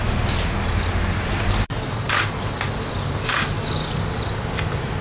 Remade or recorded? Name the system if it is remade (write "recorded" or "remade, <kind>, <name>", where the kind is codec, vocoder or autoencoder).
recorded